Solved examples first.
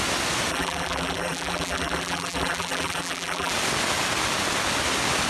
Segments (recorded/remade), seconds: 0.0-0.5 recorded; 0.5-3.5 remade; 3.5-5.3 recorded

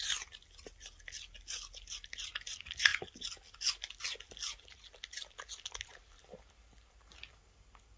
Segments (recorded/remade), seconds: 0.0-8.0 recorded

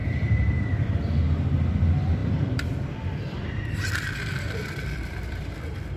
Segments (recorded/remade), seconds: 0.0-0.9 remade; 0.9-2.2 recorded; 2.2-6.0 remade

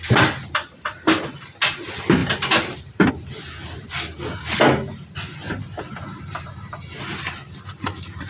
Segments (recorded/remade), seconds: 0.0-2.2 recorded; 2.2-3.1 remade; 3.1-8.3 recorded

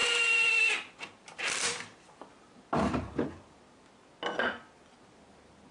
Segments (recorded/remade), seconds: 0.0-3.4 remade; 3.4-5.7 recorded